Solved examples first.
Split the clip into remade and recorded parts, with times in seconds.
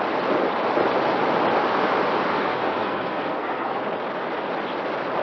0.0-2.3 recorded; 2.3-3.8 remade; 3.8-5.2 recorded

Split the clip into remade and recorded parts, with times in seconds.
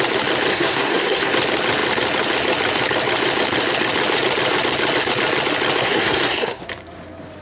0.0-0.5 recorded; 0.5-1.3 remade; 1.3-5.8 recorded; 5.8-6.6 remade; 6.6-7.4 recorded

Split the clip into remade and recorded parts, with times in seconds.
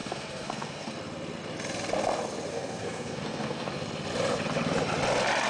0.0-0.9 remade; 0.9-2.5 recorded; 2.5-3.7 remade; 3.7-5.5 recorded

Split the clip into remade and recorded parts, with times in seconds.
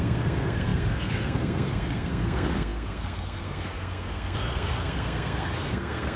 0.0-6.2 remade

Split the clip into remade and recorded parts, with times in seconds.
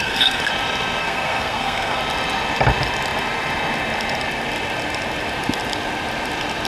0.0-0.5 remade; 0.5-1.0 recorded; 1.0-2.0 remade; 2.0-6.7 recorded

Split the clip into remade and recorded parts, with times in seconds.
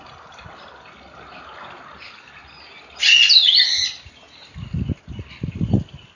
0.0-6.2 recorded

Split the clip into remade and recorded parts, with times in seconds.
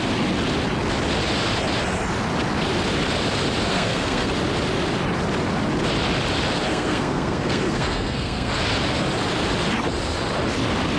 0.0-3.7 recorded; 3.7-4.3 remade; 4.3-6.7 recorded; 6.7-8.5 remade; 8.5-11.0 recorded